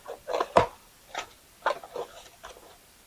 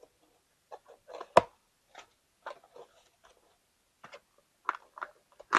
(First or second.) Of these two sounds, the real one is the second